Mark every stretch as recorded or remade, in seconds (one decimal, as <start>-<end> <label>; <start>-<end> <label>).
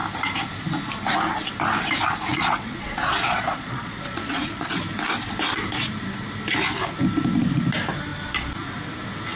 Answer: 0.0-2.3 recorded; 2.3-4.8 remade; 4.8-9.4 recorded